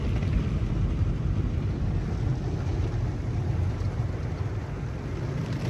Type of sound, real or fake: real